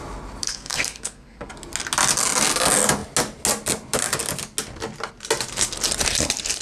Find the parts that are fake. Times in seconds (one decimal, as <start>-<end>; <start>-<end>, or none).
0.4-1.5